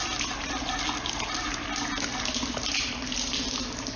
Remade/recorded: recorded